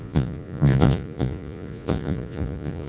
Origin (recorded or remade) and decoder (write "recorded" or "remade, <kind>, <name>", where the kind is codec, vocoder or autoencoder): remade, vocoder, Vocos